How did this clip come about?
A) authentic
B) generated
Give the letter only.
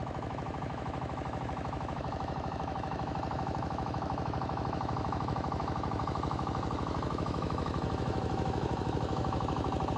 B